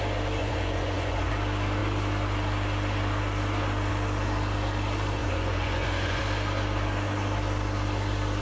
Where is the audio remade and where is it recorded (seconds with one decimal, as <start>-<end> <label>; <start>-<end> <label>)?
0.0-0.4 recorded; 0.4-1.3 remade; 1.3-5.2 recorded; 5.2-6.2 remade; 6.2-8.4 recorded